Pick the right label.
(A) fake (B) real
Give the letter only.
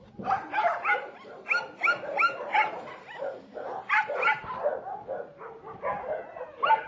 B